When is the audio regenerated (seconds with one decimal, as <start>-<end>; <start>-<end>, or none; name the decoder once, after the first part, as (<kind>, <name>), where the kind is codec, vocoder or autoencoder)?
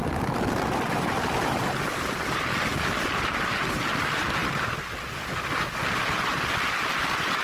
none